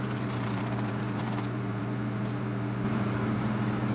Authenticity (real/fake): fake